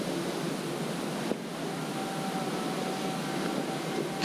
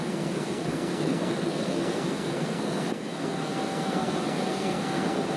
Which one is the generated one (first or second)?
second